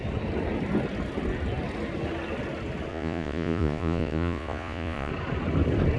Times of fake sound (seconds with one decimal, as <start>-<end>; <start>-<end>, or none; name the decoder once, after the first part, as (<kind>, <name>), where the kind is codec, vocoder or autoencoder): 2.9-5.1 (vocoder, Vocos)